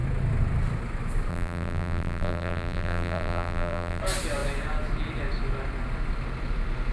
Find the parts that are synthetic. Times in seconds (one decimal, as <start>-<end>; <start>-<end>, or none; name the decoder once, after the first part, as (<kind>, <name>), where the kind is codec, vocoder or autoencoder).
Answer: 1.3-4.0 (vocoder, BigVGAN v2)

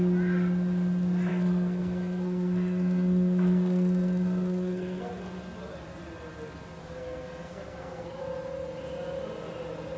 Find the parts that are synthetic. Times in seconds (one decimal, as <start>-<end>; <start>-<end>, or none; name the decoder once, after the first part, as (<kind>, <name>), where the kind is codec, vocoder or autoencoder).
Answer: 1.3-5.1 (codec, SNAC); 6.8-8.2

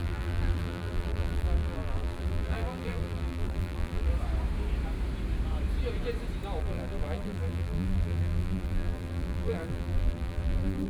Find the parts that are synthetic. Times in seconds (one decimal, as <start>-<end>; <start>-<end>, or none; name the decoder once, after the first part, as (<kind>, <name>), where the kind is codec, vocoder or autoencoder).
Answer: 0.0-4.1 (vocoder, BigVGAN v2); 6.6-10.9

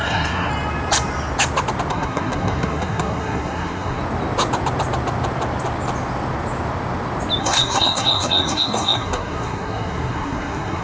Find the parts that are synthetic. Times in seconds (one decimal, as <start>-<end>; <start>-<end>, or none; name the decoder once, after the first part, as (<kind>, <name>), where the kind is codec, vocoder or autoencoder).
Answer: 0.0-0.5 (codec, SNAC); 1.9-4.0; 7.4-10.8

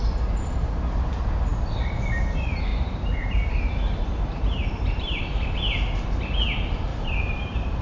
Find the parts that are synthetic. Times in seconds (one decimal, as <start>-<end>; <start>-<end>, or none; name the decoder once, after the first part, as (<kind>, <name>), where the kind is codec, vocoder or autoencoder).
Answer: 2.7-5.3 (vocoder, BigVGAN v2); 6.9-7.8

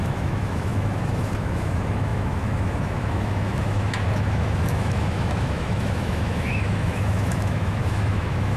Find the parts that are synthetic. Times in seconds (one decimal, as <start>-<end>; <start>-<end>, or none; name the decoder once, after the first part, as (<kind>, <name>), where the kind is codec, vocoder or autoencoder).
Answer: 0.0-8.6 (autoencoder, DAC-VAE)

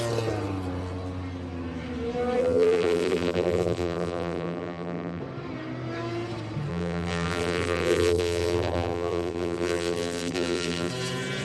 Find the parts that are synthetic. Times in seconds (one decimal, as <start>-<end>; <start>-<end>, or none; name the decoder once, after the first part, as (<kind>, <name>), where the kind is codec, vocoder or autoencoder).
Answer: 2.4-5.2 (vocoder, BigVGAN v2); 6.7-10.9

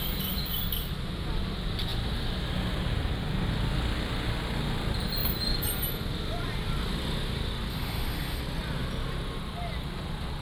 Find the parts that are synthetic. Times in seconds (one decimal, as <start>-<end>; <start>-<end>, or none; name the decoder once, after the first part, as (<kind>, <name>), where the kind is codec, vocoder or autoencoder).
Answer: 7.7-8.4 (autoencoder, DAC-VAE)